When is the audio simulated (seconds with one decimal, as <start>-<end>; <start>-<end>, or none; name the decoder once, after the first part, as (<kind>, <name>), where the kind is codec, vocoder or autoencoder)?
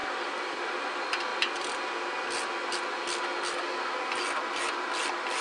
0.0-0.7 (vocoder, BigVGAN v2)